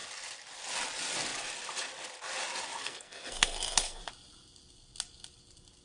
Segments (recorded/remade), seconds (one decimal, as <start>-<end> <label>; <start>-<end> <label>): 0.0-2.8 recorded; 2.8-4.0 remade; 4.0-5.8 recorded